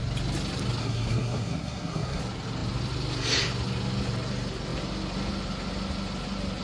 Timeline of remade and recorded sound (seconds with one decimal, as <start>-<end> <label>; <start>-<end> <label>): 0.0-0.8 recorded; 0.8-2.2 remade; 2.2-6.6 recorded